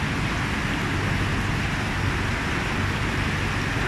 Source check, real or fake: real